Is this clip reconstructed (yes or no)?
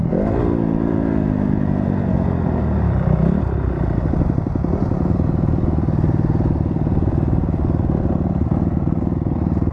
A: no